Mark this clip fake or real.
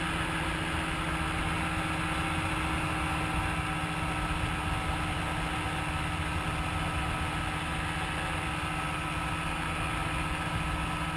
real